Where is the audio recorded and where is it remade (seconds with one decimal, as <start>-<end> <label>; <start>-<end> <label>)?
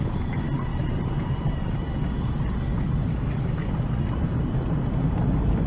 0.0-3.1 recorded; 3.1-3.7 remade; 3.7-5.7 recorded